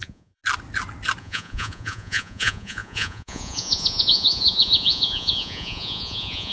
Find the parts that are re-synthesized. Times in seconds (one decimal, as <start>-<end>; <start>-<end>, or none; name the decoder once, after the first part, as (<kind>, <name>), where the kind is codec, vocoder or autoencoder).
0.0-0.4 (vocoder, Vocos); 1.2-6.5